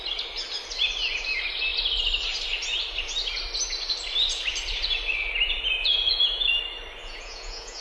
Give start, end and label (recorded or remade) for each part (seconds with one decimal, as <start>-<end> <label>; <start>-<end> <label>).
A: 0.0-5.8 recorded; 5.8-6.6 remade; 6.6-7.0 recorded; 7.0-7.8 remade